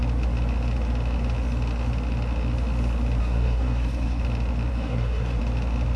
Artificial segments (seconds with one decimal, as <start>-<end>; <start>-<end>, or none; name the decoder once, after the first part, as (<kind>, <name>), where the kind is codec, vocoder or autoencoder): 3.2-4.2 (codec, SNAC); 4.7-5.4